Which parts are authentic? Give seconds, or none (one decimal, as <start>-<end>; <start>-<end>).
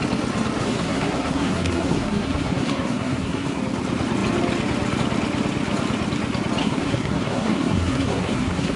0.0-0.6; 3.6-6.6